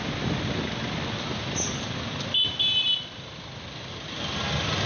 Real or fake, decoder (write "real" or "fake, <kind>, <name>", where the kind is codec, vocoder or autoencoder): real